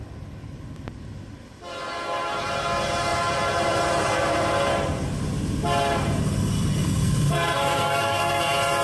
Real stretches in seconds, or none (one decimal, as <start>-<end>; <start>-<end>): 0.0-6.2; 8.4-8.8